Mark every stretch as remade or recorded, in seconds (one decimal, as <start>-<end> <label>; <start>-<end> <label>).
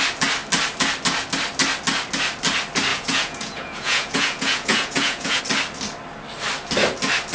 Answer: 0.0-2.9 recorded; 2.9-5.4 remade; 5.4-7.3 recorded